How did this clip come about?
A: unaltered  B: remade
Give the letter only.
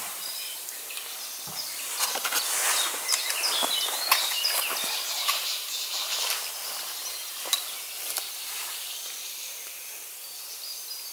B